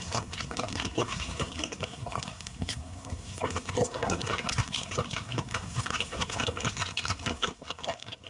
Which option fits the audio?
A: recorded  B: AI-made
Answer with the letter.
B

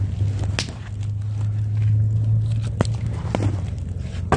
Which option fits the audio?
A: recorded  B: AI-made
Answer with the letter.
A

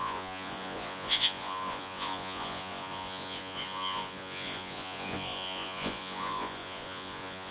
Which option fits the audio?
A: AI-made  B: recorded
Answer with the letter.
A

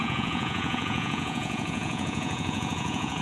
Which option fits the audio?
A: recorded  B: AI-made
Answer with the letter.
B